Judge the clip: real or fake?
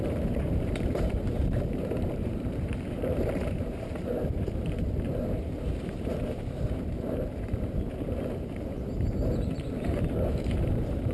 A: fake